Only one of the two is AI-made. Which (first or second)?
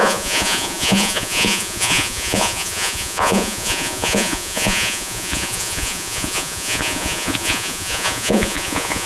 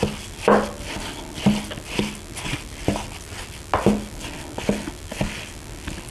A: first